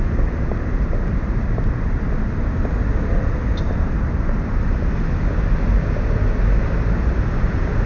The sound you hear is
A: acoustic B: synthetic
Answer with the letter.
A